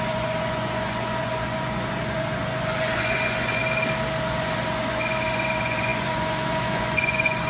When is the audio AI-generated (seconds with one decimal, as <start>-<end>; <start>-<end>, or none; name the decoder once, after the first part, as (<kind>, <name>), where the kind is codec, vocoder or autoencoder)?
0.0-3.6 (vocoder, Vocos); 4.2-7.5